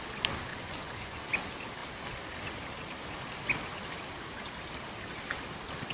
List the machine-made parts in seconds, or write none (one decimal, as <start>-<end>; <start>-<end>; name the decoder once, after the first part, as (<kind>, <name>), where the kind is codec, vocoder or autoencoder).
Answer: 0.5-1.2 (vocoder, Vocos)